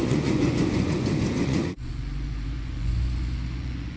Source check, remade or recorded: remade